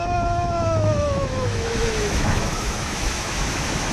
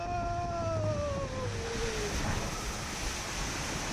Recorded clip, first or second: second